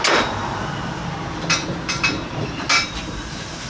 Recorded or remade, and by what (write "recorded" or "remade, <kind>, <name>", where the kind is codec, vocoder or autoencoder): recorded